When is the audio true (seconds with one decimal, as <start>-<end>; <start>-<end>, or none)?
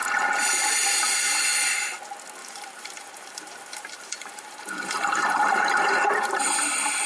0.0-2.4